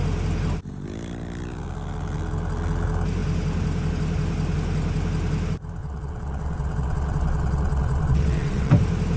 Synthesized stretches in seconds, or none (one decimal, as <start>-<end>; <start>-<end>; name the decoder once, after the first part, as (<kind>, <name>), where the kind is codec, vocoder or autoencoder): 5.8-8.7 (vocoder, WaveNeXt)